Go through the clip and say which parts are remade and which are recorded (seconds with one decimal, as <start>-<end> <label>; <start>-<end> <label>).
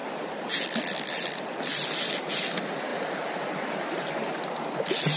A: 0.0-0.8 recorded; 0.8-2.9 remade; 2.9-4.8 recorded; 4.8-5.2 remade